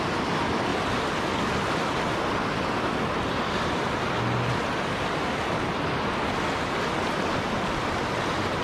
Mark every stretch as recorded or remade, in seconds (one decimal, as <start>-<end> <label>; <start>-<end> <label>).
0.0-8.6 recorded